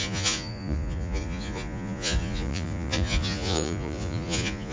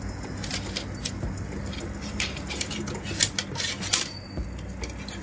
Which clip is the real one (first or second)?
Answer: second